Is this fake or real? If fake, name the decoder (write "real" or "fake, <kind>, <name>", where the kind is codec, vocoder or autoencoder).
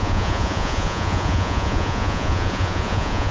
fake, vocoder, Vocos